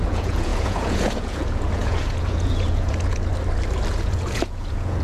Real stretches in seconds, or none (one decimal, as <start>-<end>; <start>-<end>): 3.3-3.9